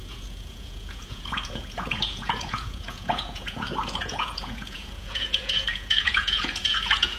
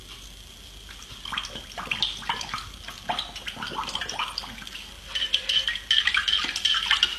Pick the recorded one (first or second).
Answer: second